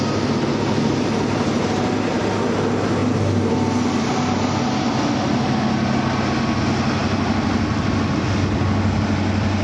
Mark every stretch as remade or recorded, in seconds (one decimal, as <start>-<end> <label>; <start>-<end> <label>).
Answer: 0.0-9.6 recorded